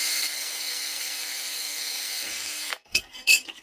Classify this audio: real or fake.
fake